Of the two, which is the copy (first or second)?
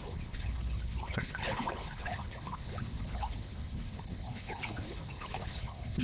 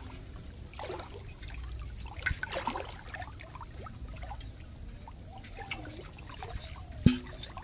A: first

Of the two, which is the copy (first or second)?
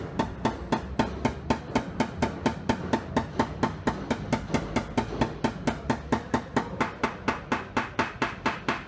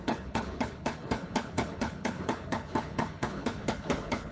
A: second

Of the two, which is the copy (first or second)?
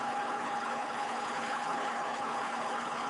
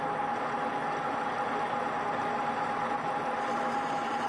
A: first